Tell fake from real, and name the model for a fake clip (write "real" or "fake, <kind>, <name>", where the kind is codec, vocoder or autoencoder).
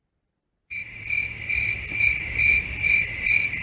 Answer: real